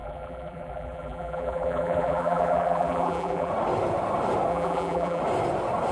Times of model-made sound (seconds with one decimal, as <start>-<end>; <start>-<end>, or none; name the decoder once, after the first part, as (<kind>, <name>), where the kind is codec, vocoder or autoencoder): 0.0-3.5 (vocoder, BigVGAN v2); 4.5-5.2